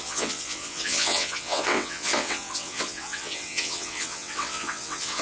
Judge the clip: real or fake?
fake